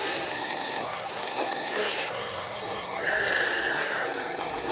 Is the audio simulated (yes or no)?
yes